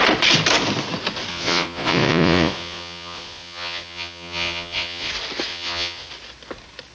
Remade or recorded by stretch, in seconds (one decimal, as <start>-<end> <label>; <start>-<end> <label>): 0.0-1.3 recorded; 1.3-5.1 remade; 5.1-5.5 recorded; 5.5-6.1 remade; 6.1-6.9 recorded